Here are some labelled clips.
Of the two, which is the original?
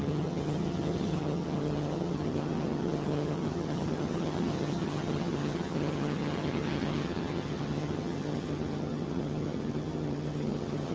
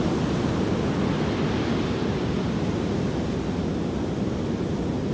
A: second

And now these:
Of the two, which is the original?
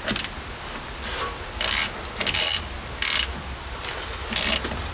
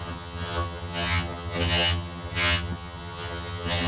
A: first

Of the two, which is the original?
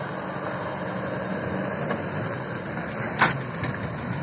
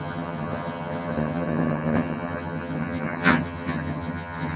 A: first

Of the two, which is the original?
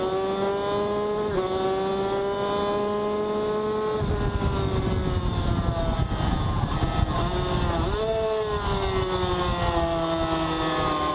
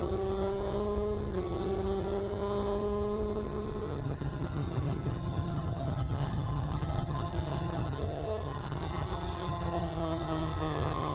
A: first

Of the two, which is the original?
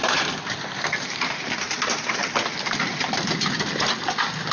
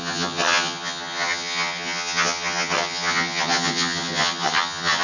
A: first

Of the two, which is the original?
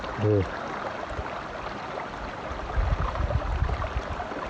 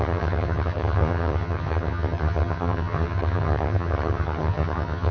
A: first